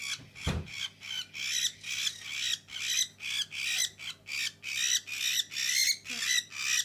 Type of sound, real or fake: real